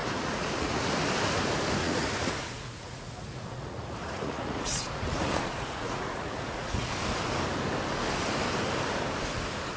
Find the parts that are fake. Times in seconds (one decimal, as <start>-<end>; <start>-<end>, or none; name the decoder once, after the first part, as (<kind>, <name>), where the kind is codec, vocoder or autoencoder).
0.0-0.9 (vocoder, Vocos); 1.8-6.9